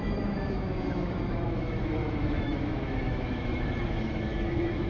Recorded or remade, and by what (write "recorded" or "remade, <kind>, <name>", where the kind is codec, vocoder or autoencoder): remade, autoencoder, DAC-VAE